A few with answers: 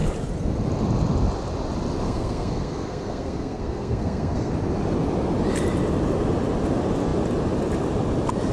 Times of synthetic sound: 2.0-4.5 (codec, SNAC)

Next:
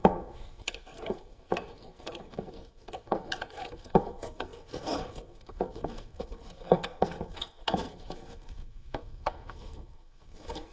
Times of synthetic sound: 0.0-10.7 (codec, SNAC)

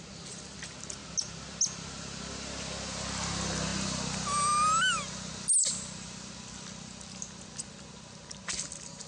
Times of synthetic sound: none

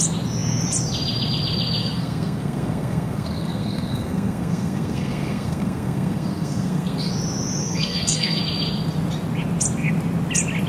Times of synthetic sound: 1.8-7.1 (codec, SNAC); 7.6-8.4